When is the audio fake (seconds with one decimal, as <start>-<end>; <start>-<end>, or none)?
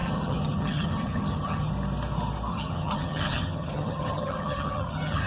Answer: 0.0-1.7; 2.5-5.3